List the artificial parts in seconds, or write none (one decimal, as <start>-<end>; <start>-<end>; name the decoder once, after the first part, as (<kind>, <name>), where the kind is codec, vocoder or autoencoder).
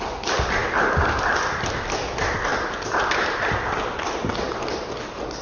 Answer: none